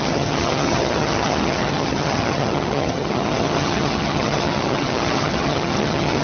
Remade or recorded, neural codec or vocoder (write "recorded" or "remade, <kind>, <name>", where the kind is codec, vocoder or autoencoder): remade, vocoder, HiFi-GAN